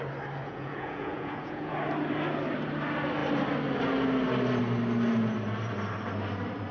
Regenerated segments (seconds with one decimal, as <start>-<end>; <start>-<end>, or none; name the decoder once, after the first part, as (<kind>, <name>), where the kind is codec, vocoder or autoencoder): 0.4-1.7 (vocoder, Vocos)